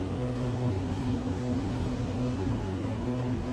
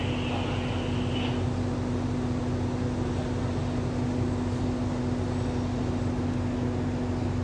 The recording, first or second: second